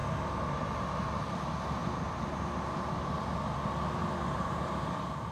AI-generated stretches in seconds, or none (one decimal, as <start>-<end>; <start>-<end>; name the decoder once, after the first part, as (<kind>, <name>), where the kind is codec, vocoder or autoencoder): 1.8-2.9 (vocoder, BigVGAN v2); 4.0-5.3